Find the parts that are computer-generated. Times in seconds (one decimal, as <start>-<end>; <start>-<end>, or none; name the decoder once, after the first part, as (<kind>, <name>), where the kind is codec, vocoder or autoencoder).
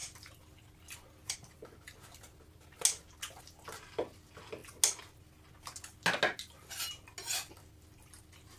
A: none